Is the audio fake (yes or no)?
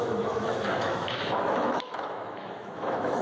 yes